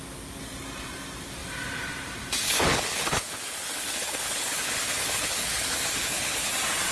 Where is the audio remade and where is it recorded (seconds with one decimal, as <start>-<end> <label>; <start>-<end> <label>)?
0.0-2.4 recorded; 2.4-6.5 remade; 6.5-6.9 recorded